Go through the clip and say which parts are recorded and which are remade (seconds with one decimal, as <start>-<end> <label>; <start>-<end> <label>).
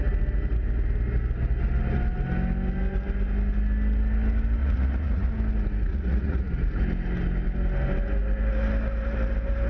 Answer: 0.0-4.6 recorded; 4.6-5.3 remade; 5.3-5.9 recorded; 5.9-6.5 remade; 6.5-9.7 recorded